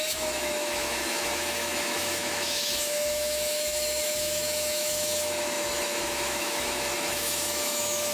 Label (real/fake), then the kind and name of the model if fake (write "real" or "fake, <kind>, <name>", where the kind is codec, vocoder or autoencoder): fake, autoencoder, DAC-VAE